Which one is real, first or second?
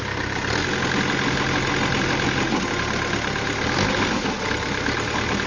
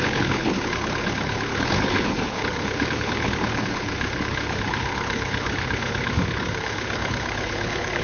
first